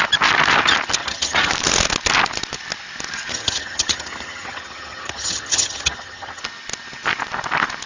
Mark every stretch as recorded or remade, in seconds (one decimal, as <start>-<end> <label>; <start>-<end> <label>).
0.0-1.0 recorded; 1.0-1.5 remade; 1.5-3.3 recorded; 3.3-6.4 remade; 6.4-7.9 recorded

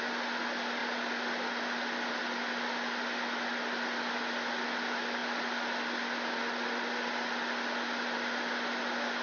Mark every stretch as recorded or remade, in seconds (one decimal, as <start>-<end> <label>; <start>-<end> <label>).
0.0-9.2 recorded

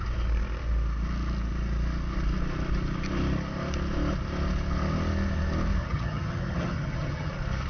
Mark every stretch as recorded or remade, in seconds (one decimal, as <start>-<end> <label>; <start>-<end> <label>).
0.0-5.8 recorded; 5.8-7.3 remade; 7.3-7.7 recorded

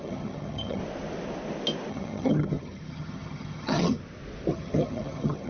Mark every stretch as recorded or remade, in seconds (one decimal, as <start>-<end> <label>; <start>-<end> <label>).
0.0-0.8 remade; 0.8-1.9 recorded; 1.9-4.0 remade; 4.0-4.5 recorded; 4.5-5.5 remade

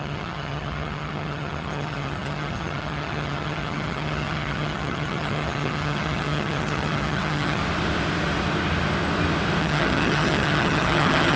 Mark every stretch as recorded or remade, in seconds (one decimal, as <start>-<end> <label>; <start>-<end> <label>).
0.0-7.6 remade; 7.6-9.6 recorded; 9.6-11.4 remade